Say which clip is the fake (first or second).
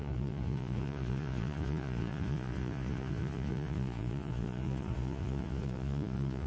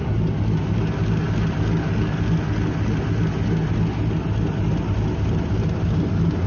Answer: first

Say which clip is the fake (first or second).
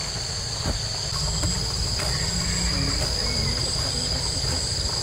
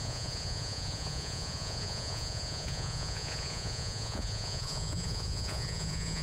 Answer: second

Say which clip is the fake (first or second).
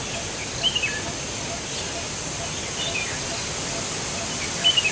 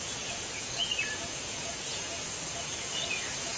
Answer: second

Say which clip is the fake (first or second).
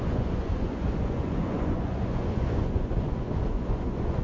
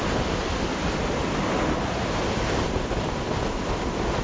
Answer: first